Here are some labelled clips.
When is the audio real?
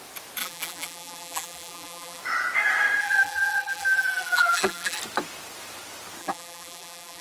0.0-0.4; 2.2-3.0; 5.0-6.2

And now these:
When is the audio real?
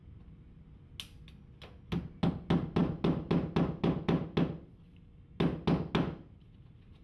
0.0-7.0